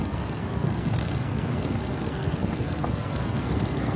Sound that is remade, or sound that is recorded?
remade